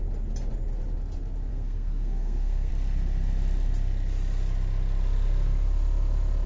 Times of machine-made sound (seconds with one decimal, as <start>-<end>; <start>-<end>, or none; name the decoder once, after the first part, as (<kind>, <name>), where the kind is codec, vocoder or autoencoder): 1.5-2.7 (codec, SNAC)